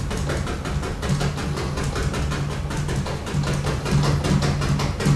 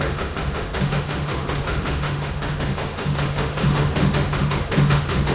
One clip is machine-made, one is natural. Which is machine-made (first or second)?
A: second